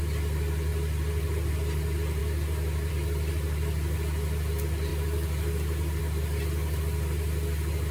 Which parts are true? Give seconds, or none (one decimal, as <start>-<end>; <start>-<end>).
4.9-6.0